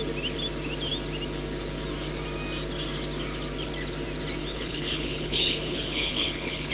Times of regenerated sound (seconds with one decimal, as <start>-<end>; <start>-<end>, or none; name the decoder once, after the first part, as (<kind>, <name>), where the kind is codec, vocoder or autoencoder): 4.4-6.7 (codec, HILCodec)